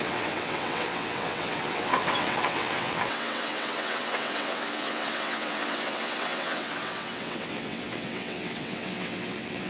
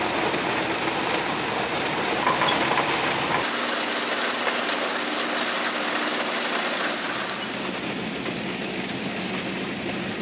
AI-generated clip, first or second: first